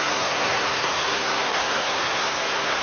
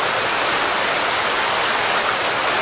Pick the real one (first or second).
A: second